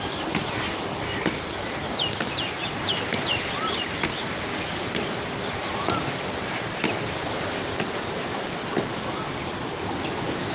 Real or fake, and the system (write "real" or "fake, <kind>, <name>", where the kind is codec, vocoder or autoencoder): real